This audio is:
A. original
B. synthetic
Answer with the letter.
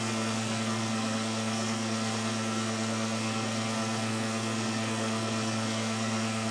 B